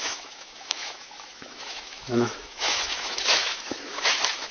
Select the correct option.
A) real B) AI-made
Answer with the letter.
B